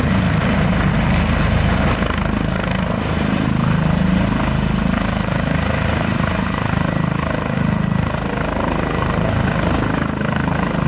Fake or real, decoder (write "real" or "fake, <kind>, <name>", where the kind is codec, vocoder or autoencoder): real